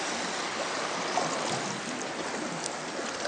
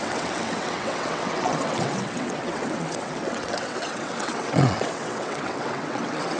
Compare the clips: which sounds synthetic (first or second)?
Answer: second